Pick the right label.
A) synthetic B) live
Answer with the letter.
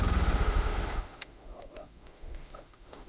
A